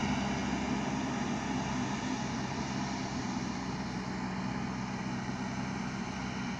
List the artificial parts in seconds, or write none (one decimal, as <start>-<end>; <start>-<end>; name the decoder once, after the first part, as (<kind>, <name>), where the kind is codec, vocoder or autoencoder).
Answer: none